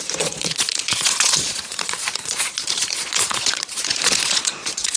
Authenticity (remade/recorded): remade